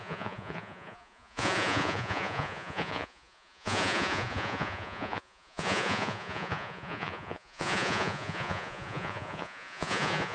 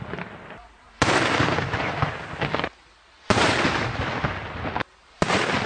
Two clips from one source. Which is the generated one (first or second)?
first